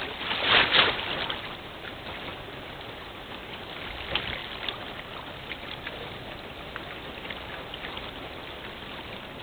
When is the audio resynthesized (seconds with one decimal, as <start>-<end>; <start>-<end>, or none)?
none